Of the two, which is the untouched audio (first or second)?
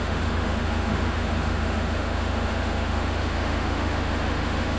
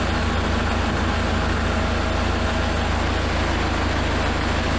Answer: second